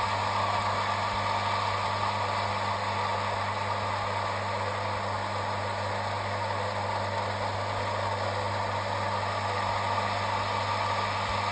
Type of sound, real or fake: real